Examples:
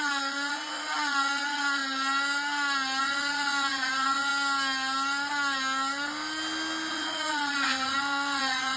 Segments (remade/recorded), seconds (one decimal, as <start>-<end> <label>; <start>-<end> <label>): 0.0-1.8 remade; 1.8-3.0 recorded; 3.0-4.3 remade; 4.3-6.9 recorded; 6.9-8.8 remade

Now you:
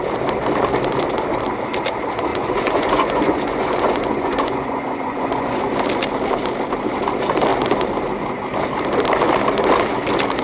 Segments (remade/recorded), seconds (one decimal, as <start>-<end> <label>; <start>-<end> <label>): 0.0-2.3 recorded; 2.3-5.6 remade; 5.6-10.4 recorded

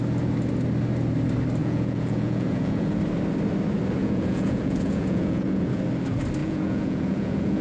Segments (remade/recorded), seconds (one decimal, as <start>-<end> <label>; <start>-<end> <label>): 0.0-1.6 recorded; 1.6-3.0 remade; 3.0-4.0 recorded; 4.0-5.8 remade; 5.8-6.4 recorded; 6.4-7.6 remade